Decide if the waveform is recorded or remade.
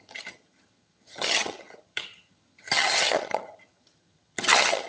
remade